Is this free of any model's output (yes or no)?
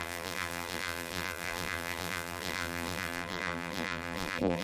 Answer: no